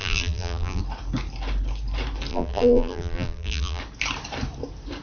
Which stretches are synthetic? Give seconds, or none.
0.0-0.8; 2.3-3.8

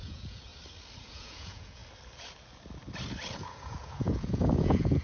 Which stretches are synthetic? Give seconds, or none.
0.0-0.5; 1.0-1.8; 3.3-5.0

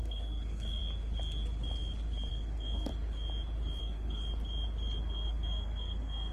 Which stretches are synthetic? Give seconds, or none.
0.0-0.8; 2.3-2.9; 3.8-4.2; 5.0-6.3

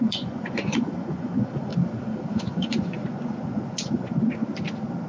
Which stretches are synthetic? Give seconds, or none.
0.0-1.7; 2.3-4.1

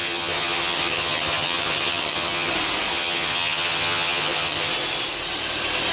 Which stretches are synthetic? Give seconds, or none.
0.0-2.5; 2.9-4.7